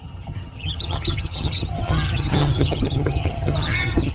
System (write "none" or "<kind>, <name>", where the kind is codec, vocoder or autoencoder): vocoder, HiFi-GAN